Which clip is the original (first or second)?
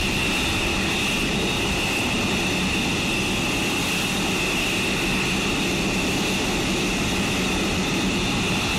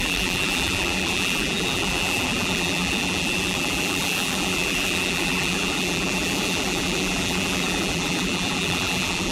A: first